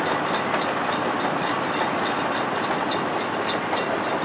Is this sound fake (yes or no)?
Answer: no